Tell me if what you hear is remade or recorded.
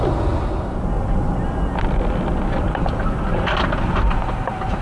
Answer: recorded